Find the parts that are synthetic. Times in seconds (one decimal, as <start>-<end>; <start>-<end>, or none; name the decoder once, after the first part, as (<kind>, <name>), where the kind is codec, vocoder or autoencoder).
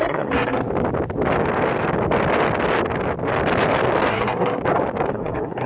0.0-0.7 (codec, SNAC); 4.1-4.6; 5.1-5.7